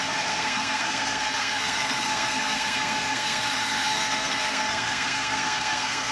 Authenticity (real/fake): fake